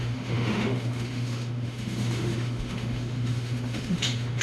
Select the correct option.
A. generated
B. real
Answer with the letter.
A